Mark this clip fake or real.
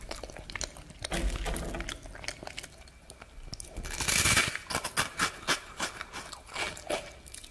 real